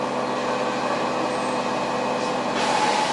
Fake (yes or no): no